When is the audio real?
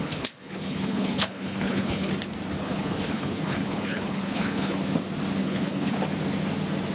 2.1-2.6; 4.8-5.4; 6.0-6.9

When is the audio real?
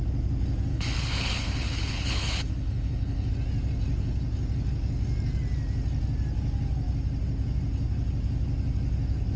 0.0-0.7; 3.3-9.4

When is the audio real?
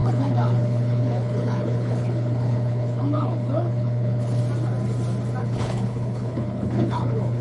4.4-5.4